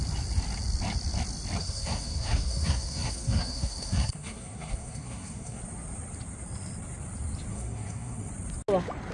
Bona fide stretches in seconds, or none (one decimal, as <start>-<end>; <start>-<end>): 0.0-1.6; 5.6-7.5; 8.3-9.1